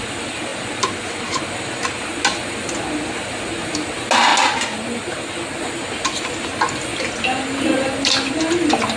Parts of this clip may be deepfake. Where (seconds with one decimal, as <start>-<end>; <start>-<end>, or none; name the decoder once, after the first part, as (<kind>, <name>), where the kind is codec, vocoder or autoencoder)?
none